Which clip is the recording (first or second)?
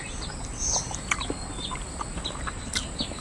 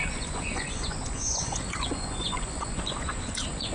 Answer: first